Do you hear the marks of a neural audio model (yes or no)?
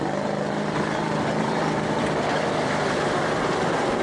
no